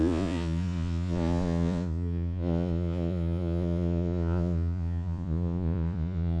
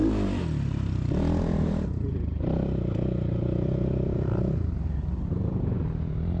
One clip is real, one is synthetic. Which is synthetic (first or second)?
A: first